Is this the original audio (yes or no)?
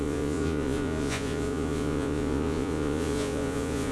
no